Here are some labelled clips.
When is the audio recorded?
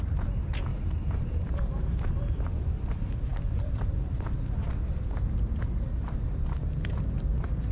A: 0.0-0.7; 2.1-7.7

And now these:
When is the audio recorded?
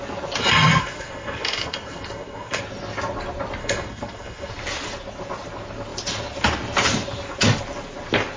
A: 0.0-0.7; 2.6-3.6; 4.5-8.4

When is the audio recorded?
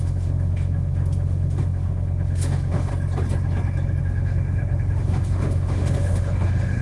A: 2.9-4.0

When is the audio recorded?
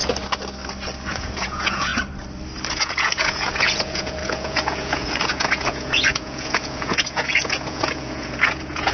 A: 0.0-1.1; 1.9-2.7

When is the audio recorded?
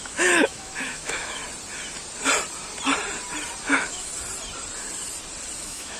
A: 1.4-3.6; 4.1-5.6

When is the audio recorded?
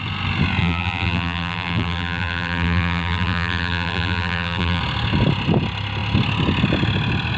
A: 0.0-0.6; 4.8-7.4